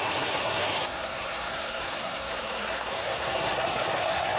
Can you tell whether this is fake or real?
fake